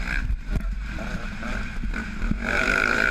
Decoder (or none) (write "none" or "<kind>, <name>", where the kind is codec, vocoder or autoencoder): vocoder, BigVGAN v2